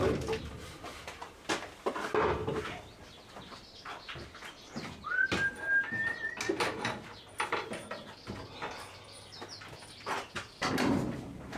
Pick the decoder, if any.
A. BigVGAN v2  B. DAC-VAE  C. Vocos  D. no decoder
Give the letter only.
D